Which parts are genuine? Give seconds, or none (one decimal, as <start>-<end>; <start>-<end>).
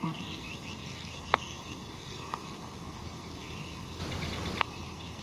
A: 4.0-4.6